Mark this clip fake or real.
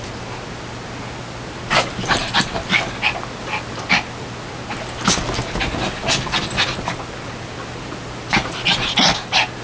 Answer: real